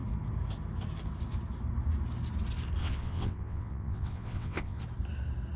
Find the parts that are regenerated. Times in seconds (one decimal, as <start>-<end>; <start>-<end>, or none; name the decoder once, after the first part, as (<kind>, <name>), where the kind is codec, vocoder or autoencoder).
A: 2.8-4.8 (vocoder, WaveNeXt)